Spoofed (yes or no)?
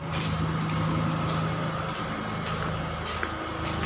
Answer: no